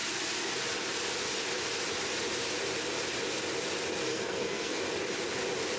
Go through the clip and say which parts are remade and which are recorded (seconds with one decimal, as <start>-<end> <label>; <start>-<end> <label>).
0.0-4.1 recorded; 4.1-4.8 remade; 4.8-5.8 recorded